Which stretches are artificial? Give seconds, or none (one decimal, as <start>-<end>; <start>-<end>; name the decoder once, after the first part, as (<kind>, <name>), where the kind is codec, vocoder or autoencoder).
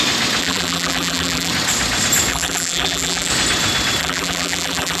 0.4-1.5 (vocoder, BigVGAN v2); 2.3-3.3; 4.0-5.0